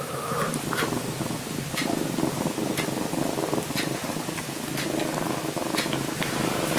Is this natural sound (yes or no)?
yes